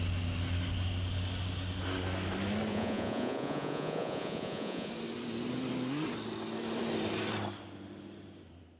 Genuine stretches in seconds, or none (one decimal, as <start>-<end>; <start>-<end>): 0.0-2.7; 4.9-8.8